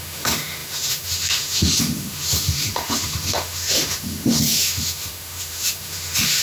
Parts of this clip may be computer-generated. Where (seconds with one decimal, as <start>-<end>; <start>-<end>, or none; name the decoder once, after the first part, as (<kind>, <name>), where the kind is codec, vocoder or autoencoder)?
0.0-6.4 (autoencoder, DAC-VAE)